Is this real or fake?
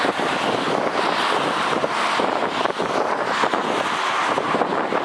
real